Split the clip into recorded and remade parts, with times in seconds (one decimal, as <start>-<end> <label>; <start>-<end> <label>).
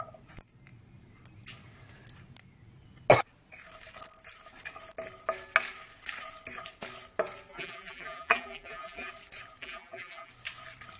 0.0-7.5 recorded; 7.5-9.1 remade; 9.1-9.6 recorded; 9.6-10.3 remade; 10.3-11.0 recorded